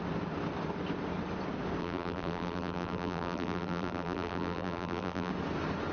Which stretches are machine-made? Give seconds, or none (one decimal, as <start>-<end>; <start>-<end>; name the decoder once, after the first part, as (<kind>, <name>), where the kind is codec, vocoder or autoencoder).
1.8-5.3 (vocoder, BigVGAN v2)